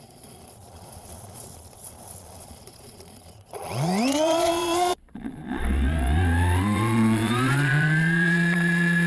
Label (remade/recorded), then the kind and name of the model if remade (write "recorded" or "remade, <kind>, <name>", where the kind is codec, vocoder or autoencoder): remade, vocoder, Vocos